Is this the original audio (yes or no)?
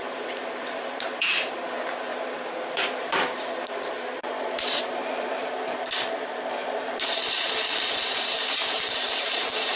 no